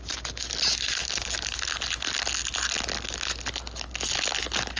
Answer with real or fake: real